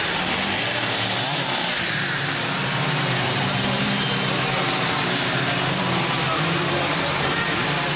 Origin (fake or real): fake